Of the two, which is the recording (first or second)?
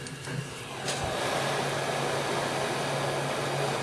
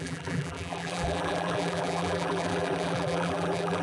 first